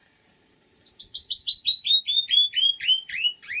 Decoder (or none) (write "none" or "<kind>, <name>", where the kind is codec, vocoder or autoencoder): vocoder, BigVGAN v2